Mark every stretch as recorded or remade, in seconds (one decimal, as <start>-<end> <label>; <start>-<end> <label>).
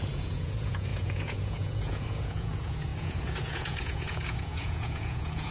0.0-5.5 remade